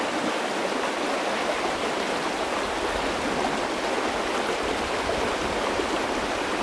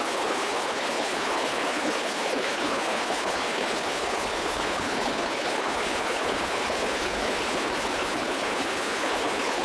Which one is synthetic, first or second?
second